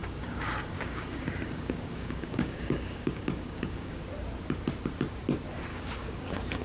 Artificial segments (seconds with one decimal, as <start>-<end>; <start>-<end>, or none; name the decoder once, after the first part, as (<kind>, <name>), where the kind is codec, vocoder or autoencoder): 0.0-4.0 (codec, DAC); 5.7-6.6